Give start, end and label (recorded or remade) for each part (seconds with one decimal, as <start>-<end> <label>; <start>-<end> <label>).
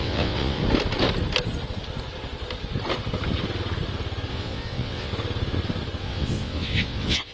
0.0-0.6 remade; 0.6-4.3 recorded; 4.3-5.1 remade; 5.1-6.0 recorded; 6.0-7.3 remade